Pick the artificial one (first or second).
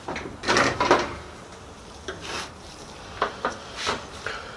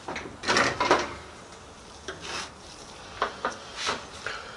first